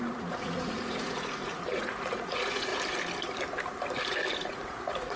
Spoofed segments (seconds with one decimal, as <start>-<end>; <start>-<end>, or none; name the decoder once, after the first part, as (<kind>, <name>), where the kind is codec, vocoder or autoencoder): 0.0-2.7 (vocoder, Vocos); 4.5-5.2